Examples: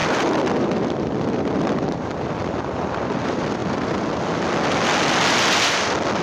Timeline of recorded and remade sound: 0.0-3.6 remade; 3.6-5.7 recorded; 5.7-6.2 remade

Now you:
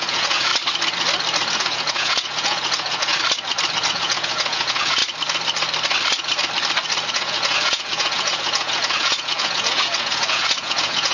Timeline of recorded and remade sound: 0.0-0.5 remade; 0.5-1.6 recorded; 1.6-3.1 remade; 3.1-3.9 recorded; 3.9-5.0 remade; 5.0-7.1 recorded; 7.1-11.1 remade

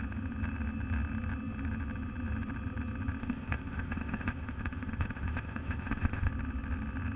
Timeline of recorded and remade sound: 0.0-3.2 recorded; 3.2-6.3 remade; 6.3-7.2 recorded

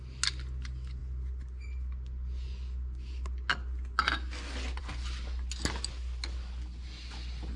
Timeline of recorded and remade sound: 0.0-7.6 recorded